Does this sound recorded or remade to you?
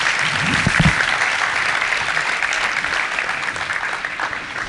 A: recorded